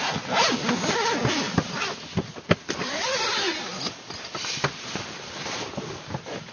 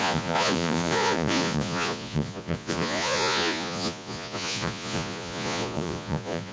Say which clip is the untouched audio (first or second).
first